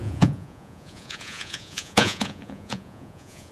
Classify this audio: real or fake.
fake